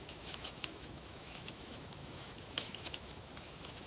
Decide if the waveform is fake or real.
fake